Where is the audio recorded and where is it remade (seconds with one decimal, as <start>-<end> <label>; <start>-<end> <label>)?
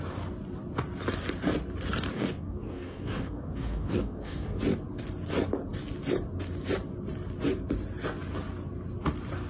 0.0-2.1 recorded; 2.1-4.6 remade; 4.6-9.5 recorded